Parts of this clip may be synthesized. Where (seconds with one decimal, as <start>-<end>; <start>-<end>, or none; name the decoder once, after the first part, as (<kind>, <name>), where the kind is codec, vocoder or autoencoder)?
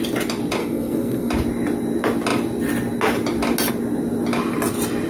0.6-1.3 (codec, SNAC)